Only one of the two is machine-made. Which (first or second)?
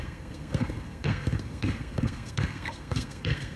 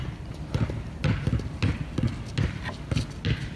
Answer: first